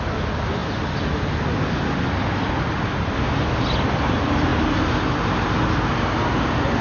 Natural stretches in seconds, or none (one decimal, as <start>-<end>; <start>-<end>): 0.0-6.8